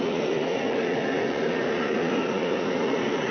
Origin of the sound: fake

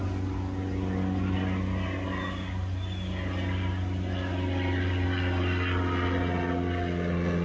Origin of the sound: real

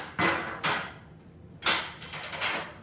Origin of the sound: real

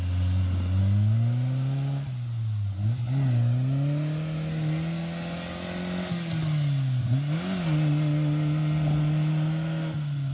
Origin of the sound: real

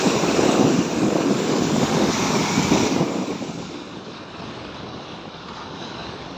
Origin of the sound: fake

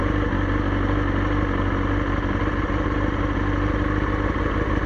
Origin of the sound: real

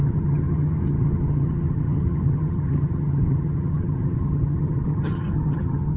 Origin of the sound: fake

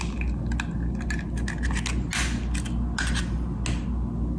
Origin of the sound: real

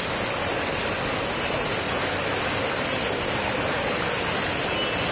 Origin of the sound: real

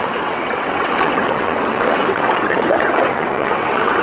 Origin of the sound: fake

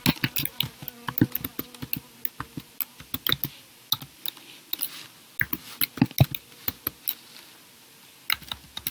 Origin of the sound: real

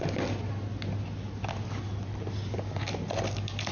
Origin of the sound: real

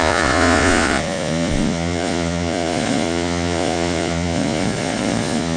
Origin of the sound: fake